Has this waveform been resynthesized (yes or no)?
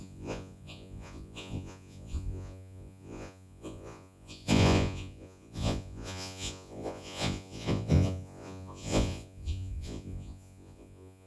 yes